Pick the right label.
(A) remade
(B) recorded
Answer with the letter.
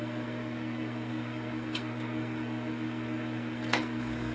A